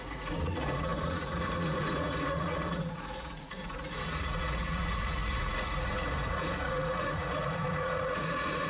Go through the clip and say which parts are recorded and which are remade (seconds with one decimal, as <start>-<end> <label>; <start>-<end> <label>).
0.0-8.7 remade